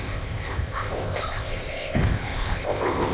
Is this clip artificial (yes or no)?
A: yes